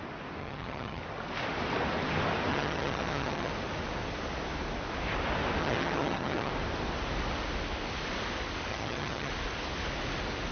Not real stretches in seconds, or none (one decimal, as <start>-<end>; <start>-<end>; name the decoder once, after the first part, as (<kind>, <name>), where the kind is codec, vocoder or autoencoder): 0.4-1.0 (vocoder, HiFi-GAN); 2.5-3.5; 5.6-6.5; 8.7-9.3